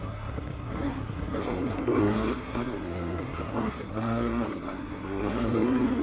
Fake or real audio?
fake